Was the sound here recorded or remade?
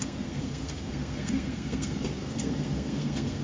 remade